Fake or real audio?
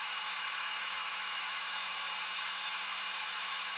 fake